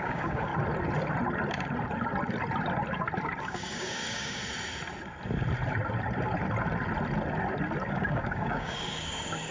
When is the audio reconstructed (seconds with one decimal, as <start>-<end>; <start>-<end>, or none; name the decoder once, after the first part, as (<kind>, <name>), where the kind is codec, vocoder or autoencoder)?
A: 0.0-0.5 (codec, DAC); 3.4-4.4; 7.9-9.5